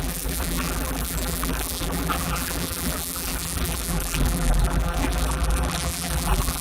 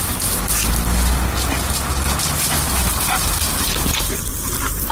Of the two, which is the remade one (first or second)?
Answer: first